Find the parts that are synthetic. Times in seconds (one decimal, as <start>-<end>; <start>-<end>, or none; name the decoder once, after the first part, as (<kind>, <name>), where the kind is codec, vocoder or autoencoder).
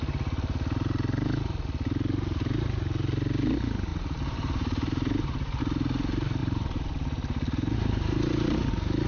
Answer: 3.9-5.6 (vocoder, BigVGAN v2); 6.4-8.7